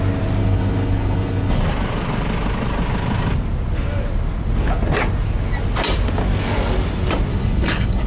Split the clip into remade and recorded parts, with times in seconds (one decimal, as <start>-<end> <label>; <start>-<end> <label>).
0.0-0.4 recorded; 0.4-1.6 remade; 1.6-7.3 recorded; 7.3-8.1 remade